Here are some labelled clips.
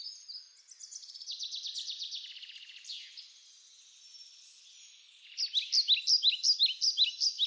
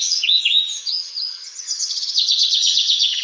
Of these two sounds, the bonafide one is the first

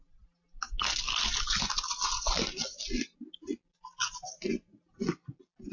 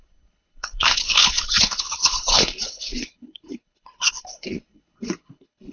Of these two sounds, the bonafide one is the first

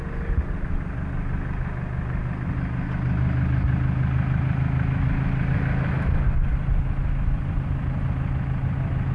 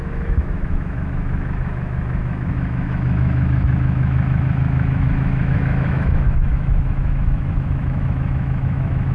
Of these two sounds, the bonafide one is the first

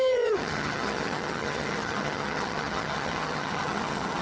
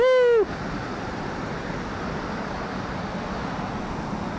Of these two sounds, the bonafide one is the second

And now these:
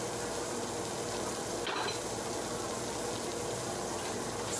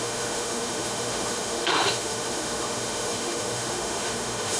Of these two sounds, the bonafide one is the first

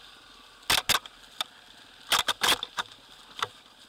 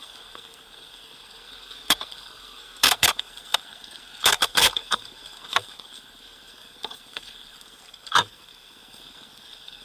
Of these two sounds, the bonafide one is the first